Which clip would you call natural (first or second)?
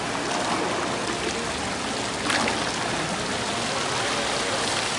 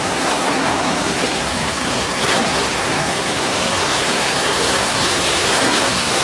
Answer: first